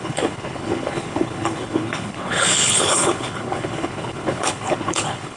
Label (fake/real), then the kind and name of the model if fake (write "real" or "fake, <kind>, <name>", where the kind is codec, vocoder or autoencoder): fake, codec, HILCodec